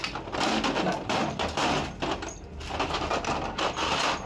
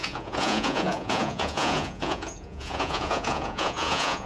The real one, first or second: first